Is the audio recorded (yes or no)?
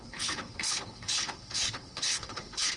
no